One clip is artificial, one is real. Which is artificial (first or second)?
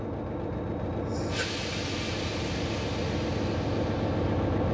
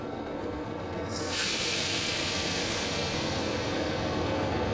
second